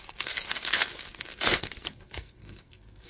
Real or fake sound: fake